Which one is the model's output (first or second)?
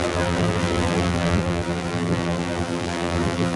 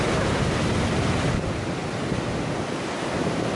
first